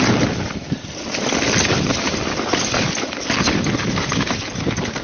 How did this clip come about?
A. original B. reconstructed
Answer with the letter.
A